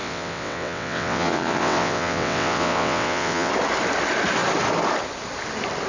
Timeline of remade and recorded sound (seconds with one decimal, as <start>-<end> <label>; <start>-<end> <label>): 0.0-3.5 remade; 3.5-5.9 recorded